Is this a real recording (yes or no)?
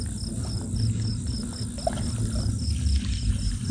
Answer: yes